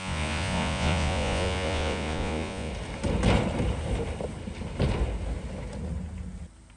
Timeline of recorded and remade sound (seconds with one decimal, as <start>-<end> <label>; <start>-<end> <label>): 0.0-2.7 remade; 2.7-6.8 recorded